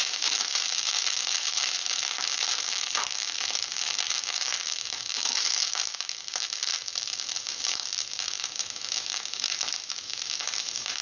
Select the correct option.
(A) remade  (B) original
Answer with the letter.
A